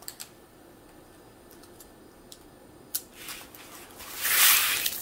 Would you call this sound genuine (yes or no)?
yes